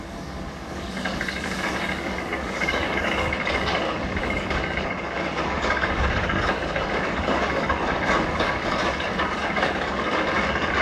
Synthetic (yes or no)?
yes